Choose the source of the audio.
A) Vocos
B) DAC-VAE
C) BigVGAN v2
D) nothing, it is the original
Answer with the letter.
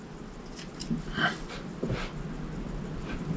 D